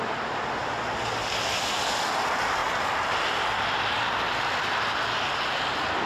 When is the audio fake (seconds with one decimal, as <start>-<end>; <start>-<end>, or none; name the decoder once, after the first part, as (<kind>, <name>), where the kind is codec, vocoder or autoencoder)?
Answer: none